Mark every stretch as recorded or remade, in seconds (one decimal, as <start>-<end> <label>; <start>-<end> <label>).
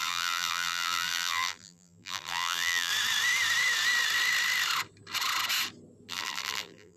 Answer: 0.0-2.9 remade; 2.9-6.1 recorded; 6.1-7.0 remade